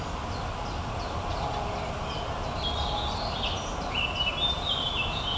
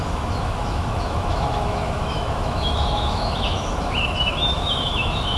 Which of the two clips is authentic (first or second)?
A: first